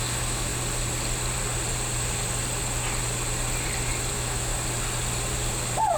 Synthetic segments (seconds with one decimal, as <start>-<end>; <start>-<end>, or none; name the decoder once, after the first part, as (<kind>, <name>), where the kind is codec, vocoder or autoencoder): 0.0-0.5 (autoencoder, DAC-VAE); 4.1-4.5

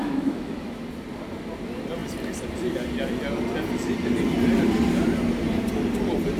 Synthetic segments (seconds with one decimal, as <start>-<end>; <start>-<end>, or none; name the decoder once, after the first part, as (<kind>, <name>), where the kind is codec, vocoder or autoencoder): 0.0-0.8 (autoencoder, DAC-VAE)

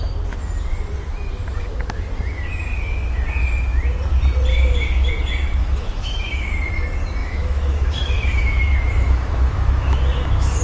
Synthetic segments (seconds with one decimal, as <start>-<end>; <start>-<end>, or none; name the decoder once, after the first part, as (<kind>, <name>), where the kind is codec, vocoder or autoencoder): 4.5-5.1 (autoencoder, DAC-VAE); 5.6-6.5; 7.2-10.6

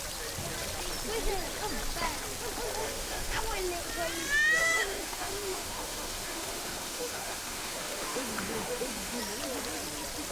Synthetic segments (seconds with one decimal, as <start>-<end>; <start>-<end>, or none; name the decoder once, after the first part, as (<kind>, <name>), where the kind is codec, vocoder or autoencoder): 2.8-3.4 (autoencoder, DAC-VAE); 4.6-9.2

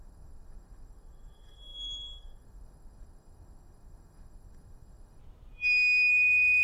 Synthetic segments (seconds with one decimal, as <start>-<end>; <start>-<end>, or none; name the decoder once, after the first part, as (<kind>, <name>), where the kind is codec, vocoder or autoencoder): 0.0-5.2 (autoencoder, DAC-VAE); 6.1-6.6

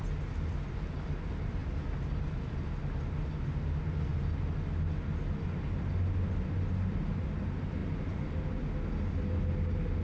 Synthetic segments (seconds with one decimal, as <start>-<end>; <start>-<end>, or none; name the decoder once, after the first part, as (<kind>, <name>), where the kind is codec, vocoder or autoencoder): none